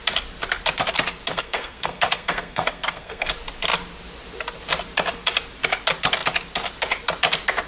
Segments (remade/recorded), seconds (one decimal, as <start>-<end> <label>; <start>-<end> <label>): 0.0-1.3 recorded; 1.3-3.3 remade; 3.3-7.7 recorded